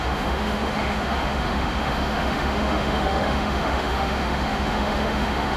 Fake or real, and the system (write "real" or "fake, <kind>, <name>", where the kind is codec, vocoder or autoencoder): fake, autoencoder, DAC-VAE